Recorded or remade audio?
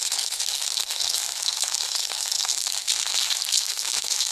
remade